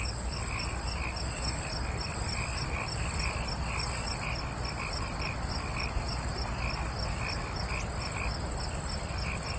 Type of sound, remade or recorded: recorded